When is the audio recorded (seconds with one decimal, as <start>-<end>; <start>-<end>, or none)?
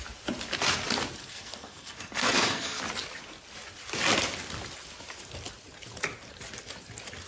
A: 0.0-1.2; 2.8-7.3